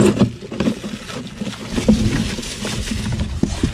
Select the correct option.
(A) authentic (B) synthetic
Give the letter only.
A